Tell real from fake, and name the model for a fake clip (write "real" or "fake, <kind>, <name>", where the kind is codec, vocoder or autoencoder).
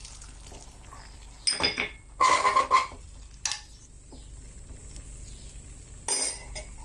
real